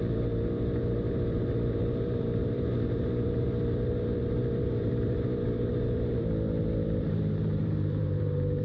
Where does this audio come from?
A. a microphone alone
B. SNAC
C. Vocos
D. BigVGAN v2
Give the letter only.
D